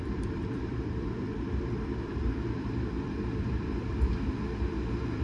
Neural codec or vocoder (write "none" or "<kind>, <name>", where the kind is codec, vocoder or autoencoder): vocoder, BigVGAN v2